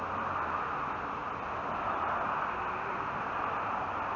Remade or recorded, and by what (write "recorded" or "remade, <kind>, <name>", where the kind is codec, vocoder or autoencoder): recorded